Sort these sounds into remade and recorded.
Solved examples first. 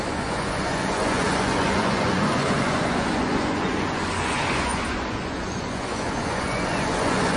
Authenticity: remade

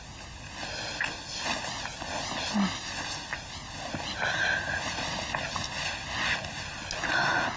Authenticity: recorded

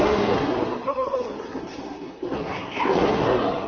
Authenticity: remade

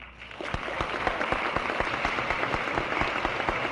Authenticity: recorded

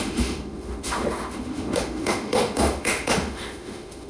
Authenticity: remade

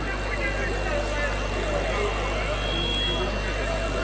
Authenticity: recorded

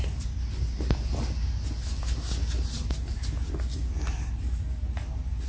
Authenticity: recorded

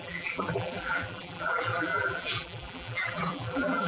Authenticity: remade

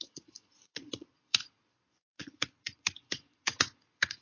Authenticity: remade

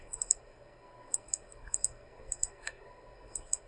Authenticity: remade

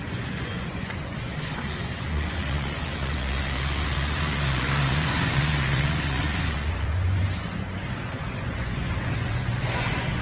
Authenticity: remade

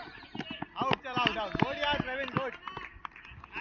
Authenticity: recorded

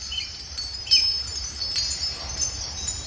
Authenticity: remade